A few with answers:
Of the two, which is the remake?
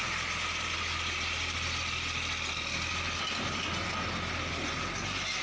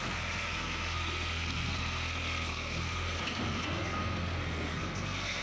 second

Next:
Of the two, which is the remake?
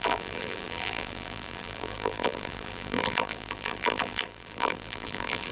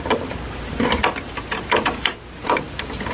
first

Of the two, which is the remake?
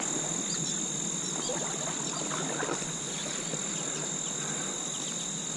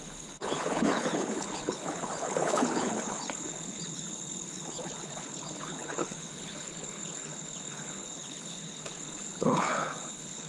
second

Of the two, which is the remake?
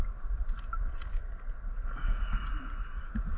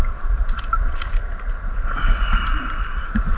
second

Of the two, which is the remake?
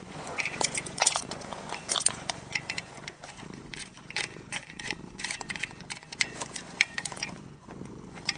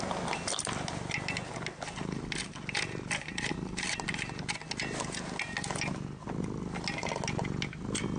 first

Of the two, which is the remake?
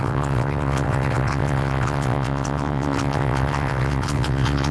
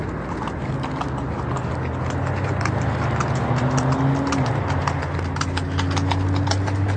first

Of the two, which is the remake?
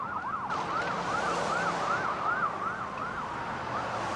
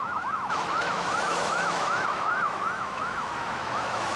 second